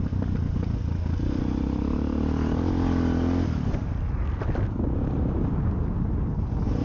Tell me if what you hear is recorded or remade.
recorded